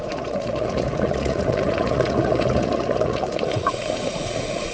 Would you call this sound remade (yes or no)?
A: yes